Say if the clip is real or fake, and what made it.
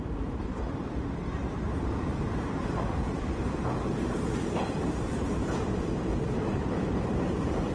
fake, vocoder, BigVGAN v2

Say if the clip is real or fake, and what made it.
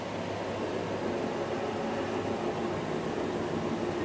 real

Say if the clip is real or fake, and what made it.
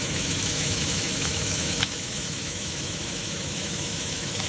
fake, autoencoder, DAC-VAE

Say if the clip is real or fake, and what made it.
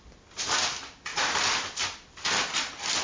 real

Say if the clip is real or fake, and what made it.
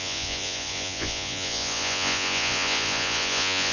fake, vocoder, Vocos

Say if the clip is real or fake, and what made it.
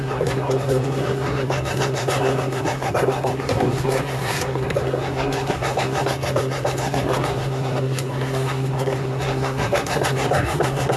fake, codec, SNAC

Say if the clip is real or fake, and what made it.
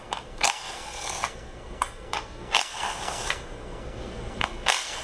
fake, codec, SNAC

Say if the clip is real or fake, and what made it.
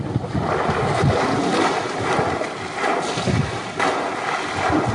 real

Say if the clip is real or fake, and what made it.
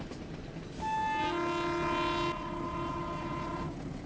real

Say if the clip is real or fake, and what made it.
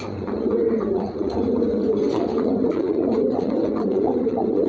fake, vocoder, Vocos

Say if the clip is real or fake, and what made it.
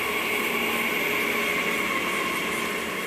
real